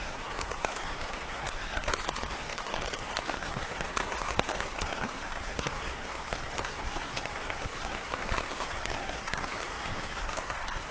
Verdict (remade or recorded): remade